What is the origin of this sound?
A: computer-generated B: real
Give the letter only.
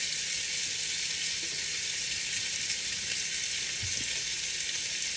B